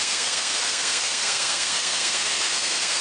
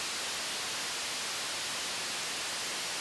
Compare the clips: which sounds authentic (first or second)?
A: second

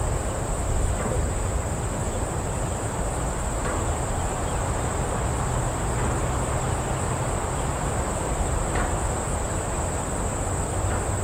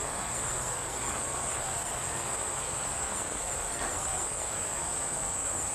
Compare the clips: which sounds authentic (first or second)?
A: first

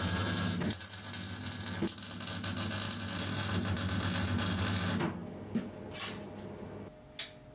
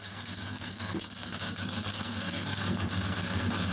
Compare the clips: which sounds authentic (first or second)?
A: first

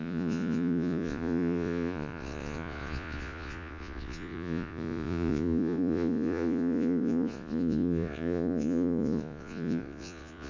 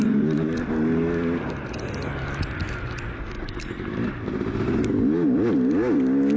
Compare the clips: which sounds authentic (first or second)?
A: second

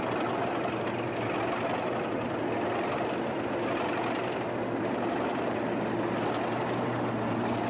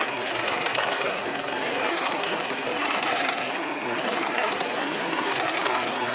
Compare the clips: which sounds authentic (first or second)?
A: first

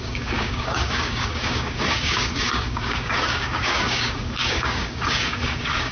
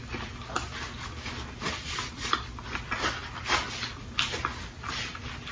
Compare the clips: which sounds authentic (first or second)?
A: second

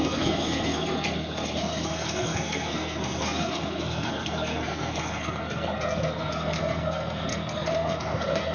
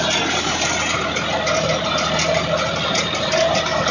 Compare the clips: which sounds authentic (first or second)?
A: second